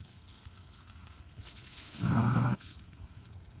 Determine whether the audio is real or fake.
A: fake